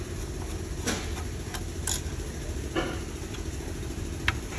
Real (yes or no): yes